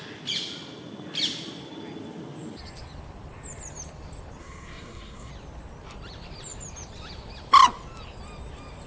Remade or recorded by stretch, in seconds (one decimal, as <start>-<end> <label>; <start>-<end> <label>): 0.0-4.4 recorded; 4.4-5.3 remade; 5.3-8.9 recorded